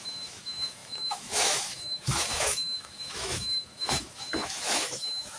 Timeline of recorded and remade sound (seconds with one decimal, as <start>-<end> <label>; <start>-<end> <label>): 0.0-5.4 remade